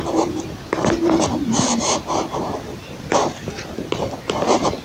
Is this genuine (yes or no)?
no